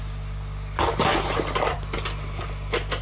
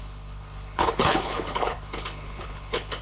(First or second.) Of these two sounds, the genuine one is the first